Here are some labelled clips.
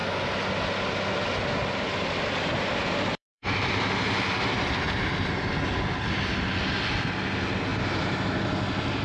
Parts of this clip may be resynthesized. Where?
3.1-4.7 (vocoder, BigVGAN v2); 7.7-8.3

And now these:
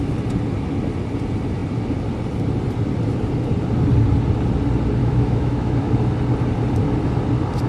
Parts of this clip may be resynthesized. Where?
5.0-5.9 (autoencoder, DAC-VAE)

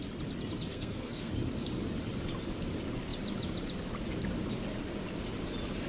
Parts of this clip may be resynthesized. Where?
0.7-1.3 (codec, SNAC)

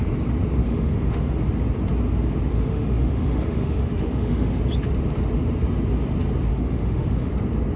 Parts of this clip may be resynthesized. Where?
0.6-1.3 (autoencoder, DAC-VAE); 2.5-4.6; 6.5-7.3

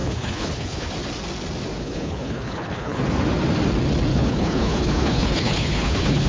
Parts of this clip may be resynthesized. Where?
0.0-0.9 (codec, HILCodec); 1.8-3.0; 4.1-6.3

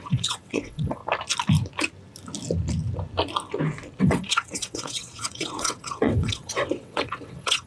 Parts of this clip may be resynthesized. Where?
0.0-1.0 (vocoder, WaveNeXt); 4.0-7.7

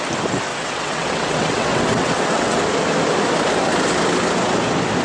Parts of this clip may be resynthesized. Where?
0.5-2.6 (vocoder, WaveNeXt)

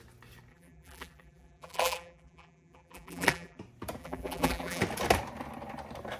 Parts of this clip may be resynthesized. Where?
0.5-3.6 (vocoder, BigVGAN v2); 4.0-4.8